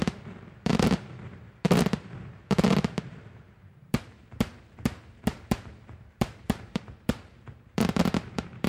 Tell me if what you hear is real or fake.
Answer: fake